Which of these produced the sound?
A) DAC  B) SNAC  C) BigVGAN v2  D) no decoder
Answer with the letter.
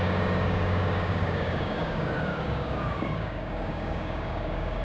A